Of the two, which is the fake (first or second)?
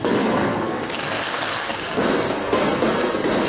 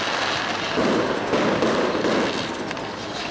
first